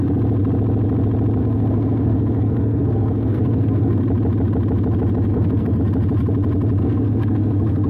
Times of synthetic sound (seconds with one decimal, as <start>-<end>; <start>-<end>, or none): 1.4-4.0; 5.3-5.8; 6.8-7.9